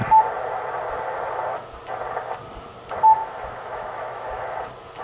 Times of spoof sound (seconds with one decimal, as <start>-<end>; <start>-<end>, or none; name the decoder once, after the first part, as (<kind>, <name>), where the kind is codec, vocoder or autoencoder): 3.2-4.4 (autoencoder, DAC-VAE)